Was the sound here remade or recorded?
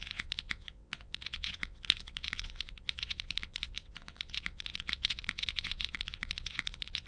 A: remade